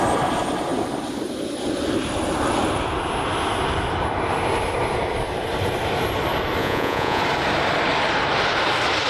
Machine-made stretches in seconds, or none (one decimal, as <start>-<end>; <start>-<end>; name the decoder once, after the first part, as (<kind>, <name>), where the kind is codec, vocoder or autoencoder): 6.6-7.2 (vocoder, Vocos)